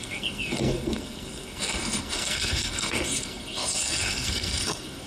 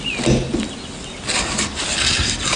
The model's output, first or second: first